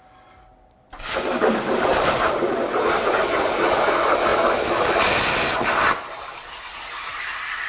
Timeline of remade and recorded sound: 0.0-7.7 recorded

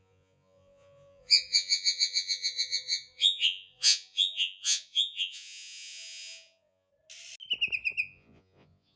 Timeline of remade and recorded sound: 0.0-6.9 remade; 6.9-8.0 recorded; 8.0-9.0 remade

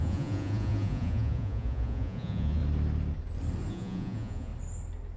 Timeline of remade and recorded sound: 0.0-2.6 remade; 2.6-3.7 recorded; 3.7-4.5 remade; 4.5-5.2 recorded

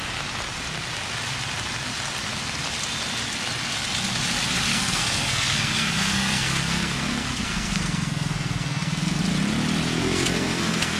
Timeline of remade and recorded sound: 0.0-4.7 recorded; 4.7-9.2 remade; 9.2-10.0 recorded; 10.0-11.0 remade